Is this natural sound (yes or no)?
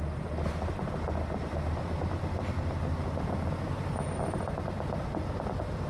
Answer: yes